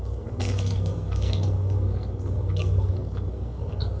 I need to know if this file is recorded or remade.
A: remade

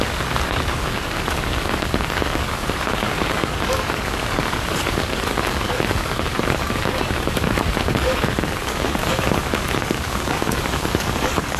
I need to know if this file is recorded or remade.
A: remade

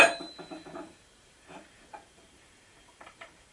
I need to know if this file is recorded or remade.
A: remade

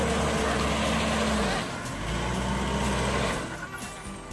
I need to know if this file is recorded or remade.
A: recorded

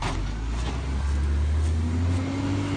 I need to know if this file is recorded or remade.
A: recorded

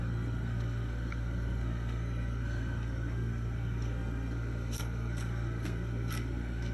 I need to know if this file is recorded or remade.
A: remade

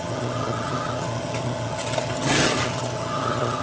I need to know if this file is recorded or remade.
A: remade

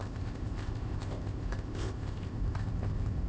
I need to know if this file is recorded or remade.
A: remade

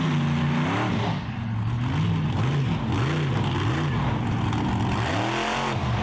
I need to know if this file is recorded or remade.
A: recorded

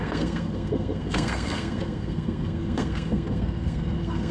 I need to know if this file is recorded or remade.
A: remade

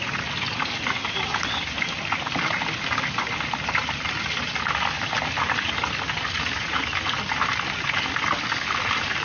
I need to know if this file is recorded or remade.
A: recorded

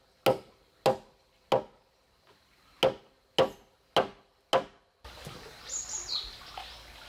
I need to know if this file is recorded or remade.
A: recorded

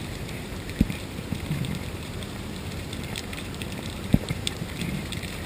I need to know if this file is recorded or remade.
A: remade